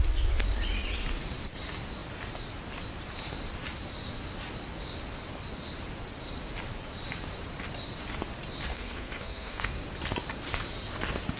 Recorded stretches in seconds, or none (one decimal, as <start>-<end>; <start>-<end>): 0.0-8.7; 9.7-11.4